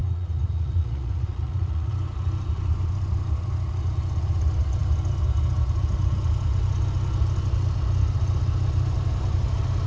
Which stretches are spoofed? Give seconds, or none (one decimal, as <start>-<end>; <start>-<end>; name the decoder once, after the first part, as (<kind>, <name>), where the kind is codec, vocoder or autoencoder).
0.0-1.9 (vocoder, Vocos)